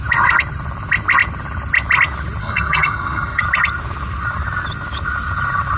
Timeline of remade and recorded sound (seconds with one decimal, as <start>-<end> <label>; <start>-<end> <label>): 0.0-2.4 recorded; 2.4-3.4 remade; 3.4-5.8 recorded